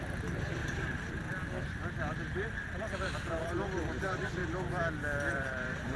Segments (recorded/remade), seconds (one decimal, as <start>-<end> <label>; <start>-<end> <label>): 0.0-0.6 remade; 0.6-2.9 recorded; 2.9-4.4 remade; 4.4-5.3 recorded; 5.3-6.0 remade